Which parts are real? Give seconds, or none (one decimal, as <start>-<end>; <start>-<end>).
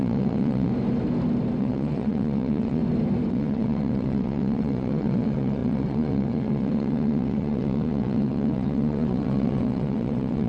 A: 0.7-1.6; 2.8-3.3